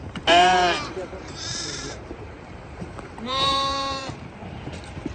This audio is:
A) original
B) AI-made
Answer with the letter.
B